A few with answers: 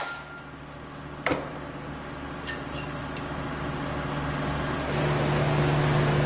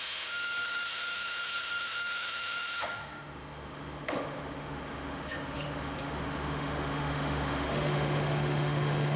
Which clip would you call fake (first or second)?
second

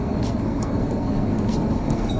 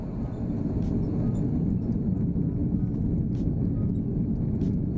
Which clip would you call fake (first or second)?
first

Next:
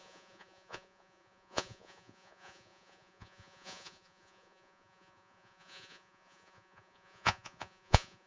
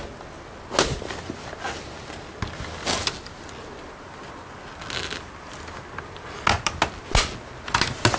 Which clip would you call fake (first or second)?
first